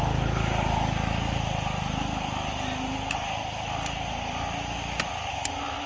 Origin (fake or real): real